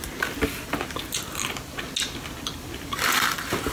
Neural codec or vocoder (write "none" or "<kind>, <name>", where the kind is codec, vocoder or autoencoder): none